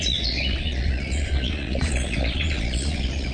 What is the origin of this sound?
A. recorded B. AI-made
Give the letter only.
B